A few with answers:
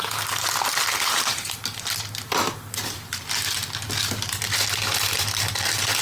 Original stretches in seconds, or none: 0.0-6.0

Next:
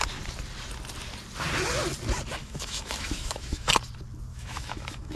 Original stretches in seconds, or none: 0.0-2.4; 3.7-4.3